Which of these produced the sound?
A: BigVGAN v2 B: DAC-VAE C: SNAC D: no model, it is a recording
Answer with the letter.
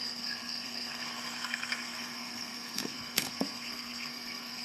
C